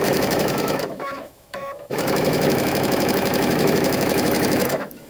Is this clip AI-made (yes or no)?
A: yes